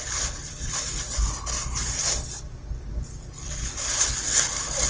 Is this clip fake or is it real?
real